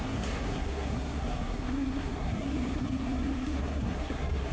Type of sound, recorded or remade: remade